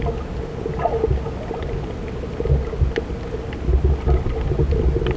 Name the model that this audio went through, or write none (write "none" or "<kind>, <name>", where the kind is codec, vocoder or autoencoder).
none